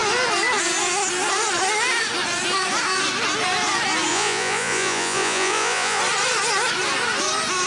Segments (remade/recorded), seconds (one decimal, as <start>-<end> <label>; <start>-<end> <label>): 0.0-4.1 recorded; 4.1-6.0 remade; 6.0-7.7 recorded